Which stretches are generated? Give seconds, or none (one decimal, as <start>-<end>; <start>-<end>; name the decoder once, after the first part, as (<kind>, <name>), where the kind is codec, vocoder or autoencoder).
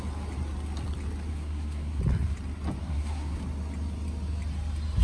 1.3-2.0 (codec, SNAC); 2.8-3.4